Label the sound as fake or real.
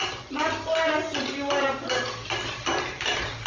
real